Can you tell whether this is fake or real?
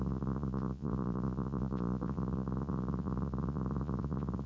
fake